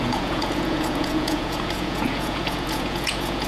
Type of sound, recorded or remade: remade